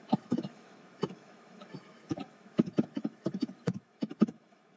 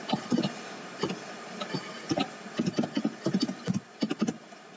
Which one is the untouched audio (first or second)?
second